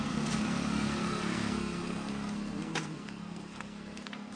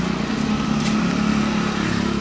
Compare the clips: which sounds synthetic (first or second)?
first